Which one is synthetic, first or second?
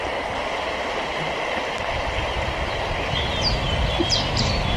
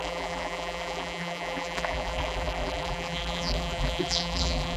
second